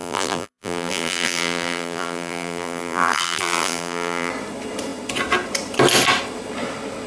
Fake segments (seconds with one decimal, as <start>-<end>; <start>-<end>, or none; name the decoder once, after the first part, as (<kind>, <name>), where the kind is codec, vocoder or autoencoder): 0.0-4.3 (vocoder, BigVGAN v2)